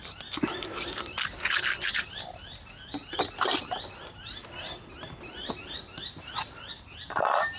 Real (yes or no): yes